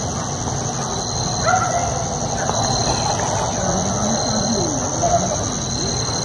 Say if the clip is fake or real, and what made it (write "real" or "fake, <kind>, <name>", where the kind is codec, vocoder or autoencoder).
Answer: real